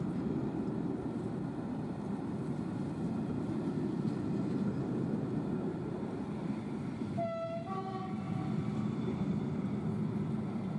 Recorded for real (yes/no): yes